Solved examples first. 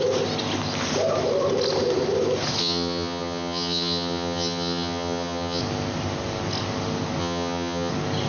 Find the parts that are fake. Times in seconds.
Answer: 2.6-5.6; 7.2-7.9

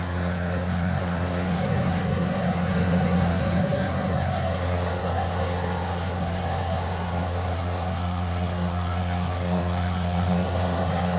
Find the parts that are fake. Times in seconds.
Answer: 0.0-11.2